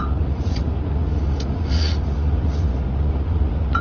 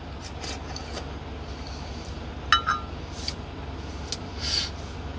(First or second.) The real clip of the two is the second